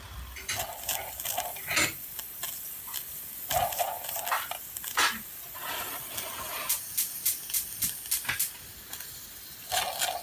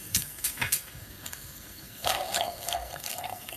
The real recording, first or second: first